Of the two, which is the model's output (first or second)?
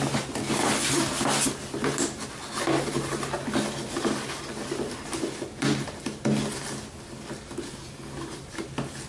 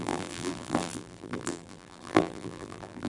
second